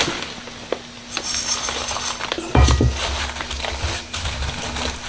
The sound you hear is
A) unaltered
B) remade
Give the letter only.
A